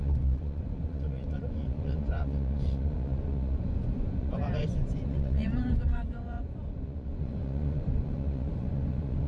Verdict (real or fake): fake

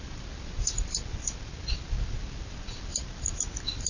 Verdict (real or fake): real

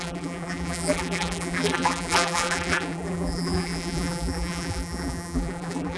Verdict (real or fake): fake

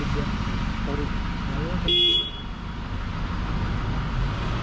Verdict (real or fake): real